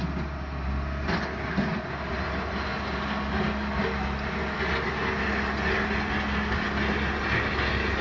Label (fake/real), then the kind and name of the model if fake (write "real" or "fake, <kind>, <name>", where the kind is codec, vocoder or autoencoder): real